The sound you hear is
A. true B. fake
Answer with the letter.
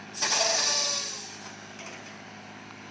A